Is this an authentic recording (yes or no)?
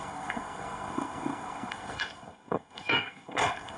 no